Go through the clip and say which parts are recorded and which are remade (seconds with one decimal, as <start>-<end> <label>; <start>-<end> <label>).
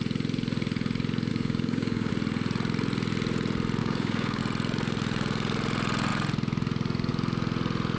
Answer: 0.0-1.3 recorded; 1.3-2.1 remade; 2.1-3.8 recorded; 3.8-4.4 remade; 4.4-8.0 recorded